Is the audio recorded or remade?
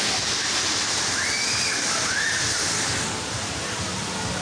recorded